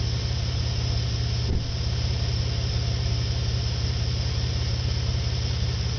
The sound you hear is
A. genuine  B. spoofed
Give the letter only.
A